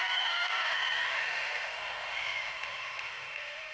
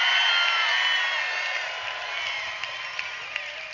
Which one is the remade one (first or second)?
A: first